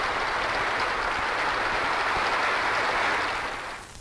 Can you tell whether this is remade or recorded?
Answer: recorded